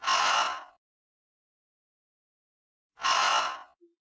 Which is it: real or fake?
real